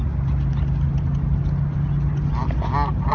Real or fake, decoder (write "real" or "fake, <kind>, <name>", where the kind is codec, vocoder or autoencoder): real